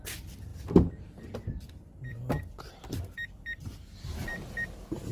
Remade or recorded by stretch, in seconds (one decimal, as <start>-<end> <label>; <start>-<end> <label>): 0.0-0.5 recorded; 0.5-3.6 remade; 3.6-5.1 recorded